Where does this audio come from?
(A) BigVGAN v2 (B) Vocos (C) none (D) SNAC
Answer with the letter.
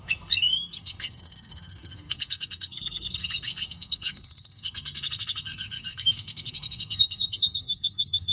D